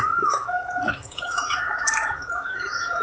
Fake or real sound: fake